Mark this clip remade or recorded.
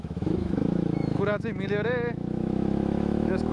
remade